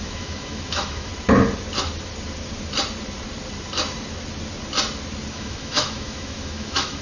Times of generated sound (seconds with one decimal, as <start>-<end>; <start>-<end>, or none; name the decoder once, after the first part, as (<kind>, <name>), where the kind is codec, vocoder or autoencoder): 0.0-1.1 (autoencoder, DAC-VAE); 5.3-7.0